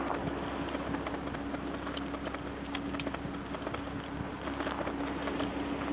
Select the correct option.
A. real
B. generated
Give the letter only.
A